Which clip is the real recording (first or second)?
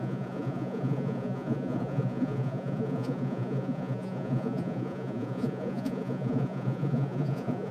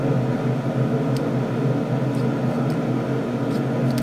second